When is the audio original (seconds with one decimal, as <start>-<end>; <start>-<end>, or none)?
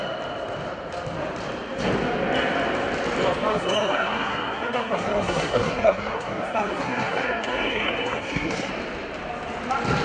0.0-3.5; 8.7-10.0